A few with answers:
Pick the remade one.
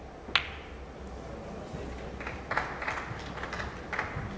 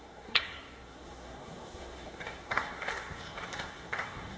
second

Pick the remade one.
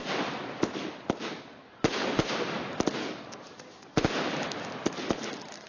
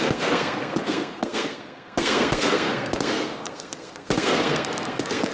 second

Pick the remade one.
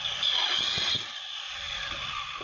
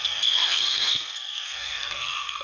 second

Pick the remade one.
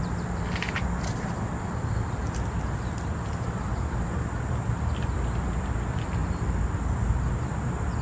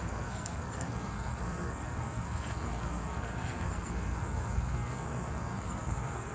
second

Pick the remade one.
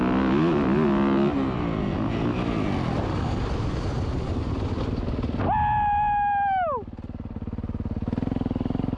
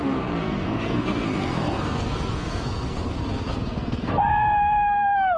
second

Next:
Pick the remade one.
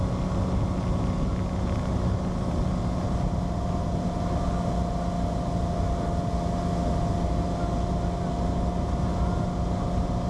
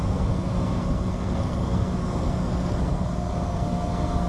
second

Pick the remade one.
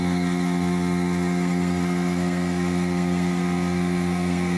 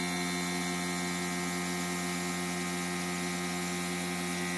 first